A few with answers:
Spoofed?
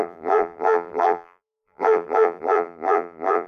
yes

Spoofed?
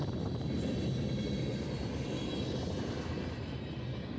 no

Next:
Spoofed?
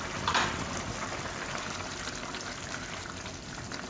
no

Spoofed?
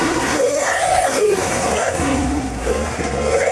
yes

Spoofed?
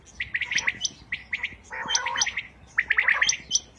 no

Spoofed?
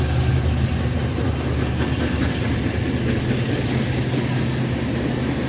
no